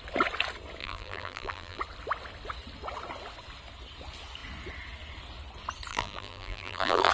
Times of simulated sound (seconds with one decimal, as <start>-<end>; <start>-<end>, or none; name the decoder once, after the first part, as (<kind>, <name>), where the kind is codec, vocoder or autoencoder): 0.8-1.8 (vocoder, BigVGAN v2); 5.9-7.1

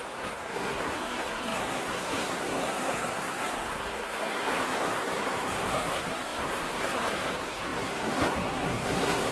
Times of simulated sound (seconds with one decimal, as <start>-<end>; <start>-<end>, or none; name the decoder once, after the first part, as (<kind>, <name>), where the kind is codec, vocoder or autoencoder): 0.0-9.3 (codec, SNAC)

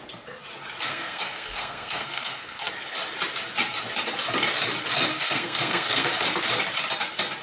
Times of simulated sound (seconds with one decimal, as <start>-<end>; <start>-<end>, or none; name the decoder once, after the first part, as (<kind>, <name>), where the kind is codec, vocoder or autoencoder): 0.9-2.7 (codec, SNAC); 5.1-6.1

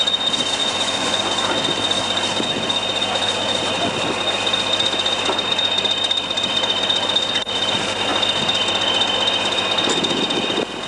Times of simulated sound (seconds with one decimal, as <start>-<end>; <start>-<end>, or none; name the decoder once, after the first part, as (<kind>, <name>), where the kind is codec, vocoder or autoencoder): 0.6-1.2 (vocoder, Vocos)

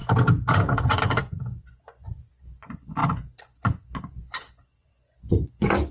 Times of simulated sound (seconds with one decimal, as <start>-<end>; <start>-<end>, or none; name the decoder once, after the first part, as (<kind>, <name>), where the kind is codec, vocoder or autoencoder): 0.7-5.9 (vocoder, Vocos)